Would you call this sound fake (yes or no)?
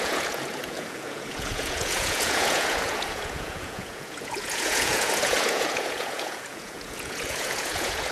yes